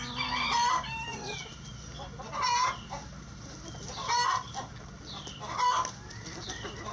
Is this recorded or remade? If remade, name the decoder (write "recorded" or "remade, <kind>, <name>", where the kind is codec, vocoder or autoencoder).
recorded